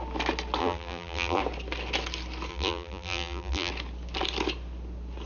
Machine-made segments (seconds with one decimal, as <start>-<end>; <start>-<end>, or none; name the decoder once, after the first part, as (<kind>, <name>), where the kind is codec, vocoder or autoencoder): 0.6-1.4 (vocoder, BigVGAN v2); 2.5-3.7